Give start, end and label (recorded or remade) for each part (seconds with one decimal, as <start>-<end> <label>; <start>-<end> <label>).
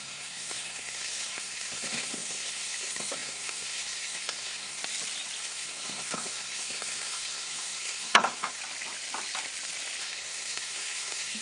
0.0-4.8 remade; 4.8-5.4 recorded; 5.4-8.6 remade; 8.6-10.0 recorded; 10.0-11.4 remade